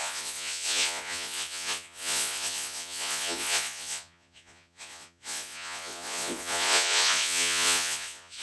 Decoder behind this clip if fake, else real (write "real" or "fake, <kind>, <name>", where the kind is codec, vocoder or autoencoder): fake, vocoder, Vocos